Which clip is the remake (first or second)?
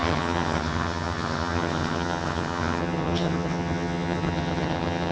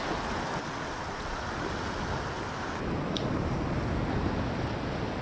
first